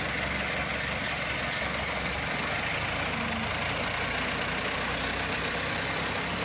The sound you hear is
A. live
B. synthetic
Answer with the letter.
A